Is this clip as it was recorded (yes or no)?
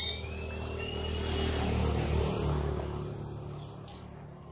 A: yes